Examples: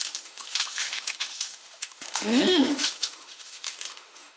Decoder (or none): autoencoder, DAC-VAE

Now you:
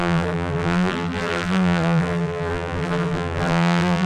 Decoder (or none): vocoder, BigVGAN v2